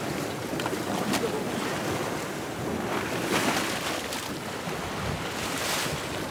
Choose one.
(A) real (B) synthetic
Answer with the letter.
A